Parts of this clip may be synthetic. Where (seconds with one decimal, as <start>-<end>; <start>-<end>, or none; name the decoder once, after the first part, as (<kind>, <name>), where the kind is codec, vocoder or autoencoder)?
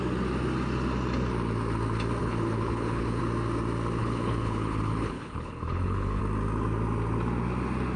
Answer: 2.2-3.2 (codec, HILCodec); 4.0-6.2